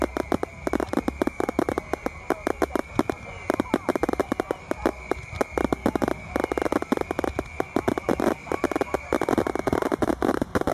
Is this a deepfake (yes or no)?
no